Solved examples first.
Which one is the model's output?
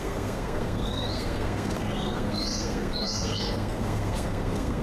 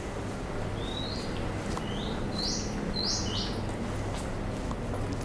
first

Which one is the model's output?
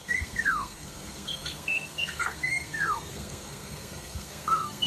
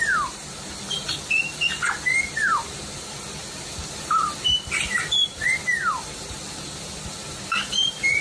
first